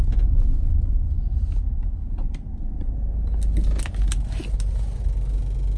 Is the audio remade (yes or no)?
no